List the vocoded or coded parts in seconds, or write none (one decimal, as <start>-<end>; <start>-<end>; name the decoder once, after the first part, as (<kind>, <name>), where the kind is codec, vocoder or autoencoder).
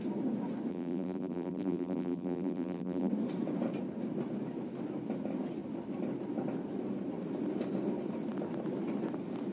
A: 0.7-3.1 (vocoder, BigVGAN v2)